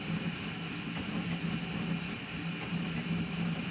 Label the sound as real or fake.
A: real